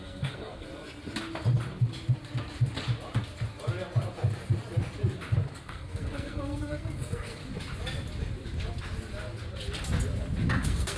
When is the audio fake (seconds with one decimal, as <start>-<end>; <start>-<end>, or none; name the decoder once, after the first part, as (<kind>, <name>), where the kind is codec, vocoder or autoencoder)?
0.0-0.7 (codec, SNAC); 5.5-7.4; 10.5-11.0